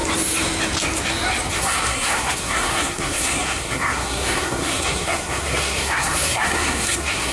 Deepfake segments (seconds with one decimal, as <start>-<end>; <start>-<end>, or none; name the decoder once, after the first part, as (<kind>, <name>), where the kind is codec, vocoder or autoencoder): 1.5-7.3 (codec, SNAC)